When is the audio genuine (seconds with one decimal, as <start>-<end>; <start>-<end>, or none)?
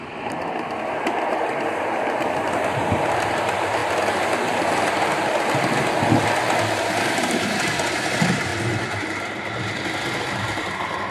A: 3.8-7.2; 8.5-10.2